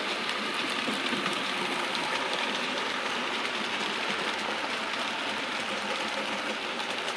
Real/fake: real